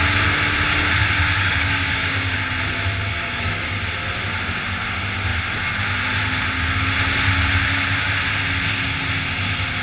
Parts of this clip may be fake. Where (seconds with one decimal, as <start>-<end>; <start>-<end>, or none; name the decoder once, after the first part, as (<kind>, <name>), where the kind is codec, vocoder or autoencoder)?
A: 1.0-2.4 (codec, DAC); 3.1-3.8